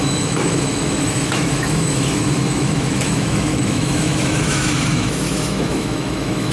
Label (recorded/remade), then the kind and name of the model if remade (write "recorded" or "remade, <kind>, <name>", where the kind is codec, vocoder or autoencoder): remade, autoencoder, DAC-VAE